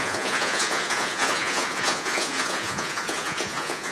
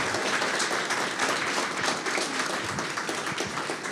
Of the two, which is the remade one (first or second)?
first